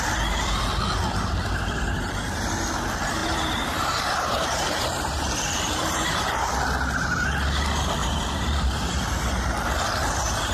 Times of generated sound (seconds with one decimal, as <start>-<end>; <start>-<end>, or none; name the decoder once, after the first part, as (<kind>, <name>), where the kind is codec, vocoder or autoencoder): 3.2-6.5 (vocoder, BigVGAN v2); 8.0-8.9